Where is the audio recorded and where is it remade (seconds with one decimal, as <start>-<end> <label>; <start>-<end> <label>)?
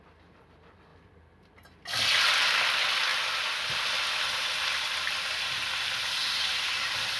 0.0-7.2 recorded